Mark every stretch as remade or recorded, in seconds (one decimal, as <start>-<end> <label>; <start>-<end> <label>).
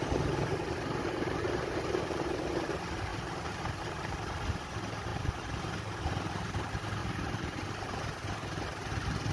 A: 0.0-1.0 recorded; 1.0-2.4 remade; 2.4-3.1 recorded; 3.1-3.8 remade; 3.8-5.1 recorded; 5.1-5.6 remade; 5.6-7.0 recorded; 7.0-7.6 remade; 7.6-9.3 recorded